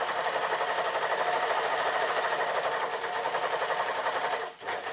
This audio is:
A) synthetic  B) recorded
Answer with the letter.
B